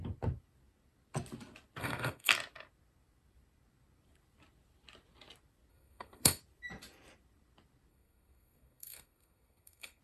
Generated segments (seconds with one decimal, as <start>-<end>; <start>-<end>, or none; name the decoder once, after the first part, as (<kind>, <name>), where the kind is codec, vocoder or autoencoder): 1.8-2.3 (codec, SNAC); 5.7-6.4; 7.9-10.0